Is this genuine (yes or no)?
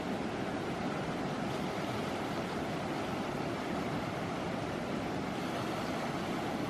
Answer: yes